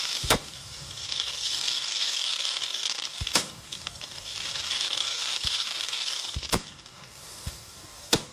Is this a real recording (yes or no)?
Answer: no